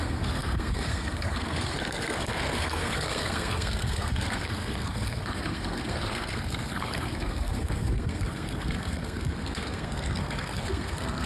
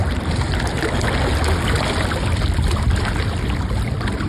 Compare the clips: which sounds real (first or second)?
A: second